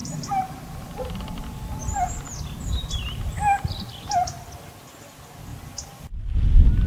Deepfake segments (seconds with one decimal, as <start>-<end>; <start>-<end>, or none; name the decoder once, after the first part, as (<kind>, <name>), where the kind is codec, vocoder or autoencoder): none